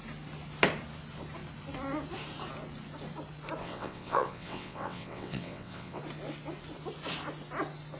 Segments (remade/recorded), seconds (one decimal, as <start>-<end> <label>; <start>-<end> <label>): 0.0-3.6 recorded; 3.6-6.0 remade; 6.0-8.0 recorded